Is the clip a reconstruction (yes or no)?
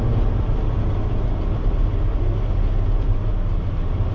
no